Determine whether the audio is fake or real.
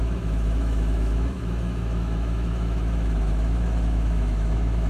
fake